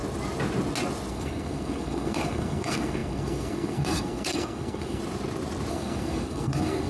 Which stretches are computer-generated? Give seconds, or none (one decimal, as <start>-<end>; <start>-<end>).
1.1-5.0; 5.7-6.9